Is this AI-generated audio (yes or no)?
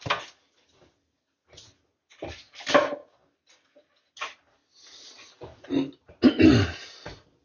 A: no